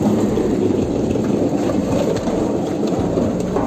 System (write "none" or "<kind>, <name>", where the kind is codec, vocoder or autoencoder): vocoder, BigVGAN v2